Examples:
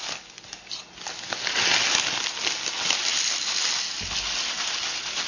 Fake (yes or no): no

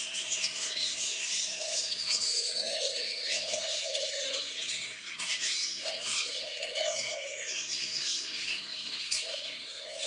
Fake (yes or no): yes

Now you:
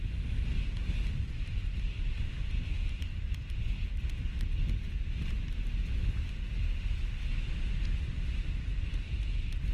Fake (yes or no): no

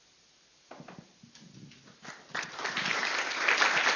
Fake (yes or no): no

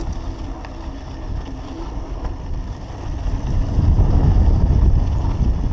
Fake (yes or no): no